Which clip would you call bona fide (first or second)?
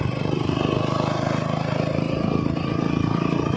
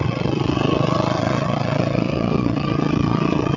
first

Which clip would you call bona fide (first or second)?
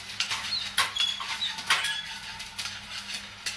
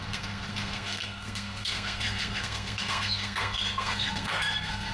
first